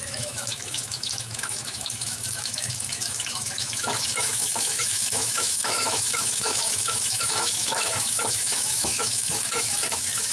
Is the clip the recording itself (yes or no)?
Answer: no